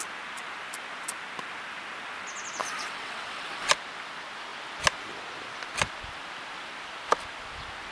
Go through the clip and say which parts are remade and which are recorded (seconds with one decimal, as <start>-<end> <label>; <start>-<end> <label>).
0.0-2.6 recorded; 2.6-3.7 remade; 3.7-7.9 recorded